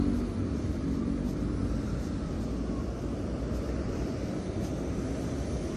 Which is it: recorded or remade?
recorded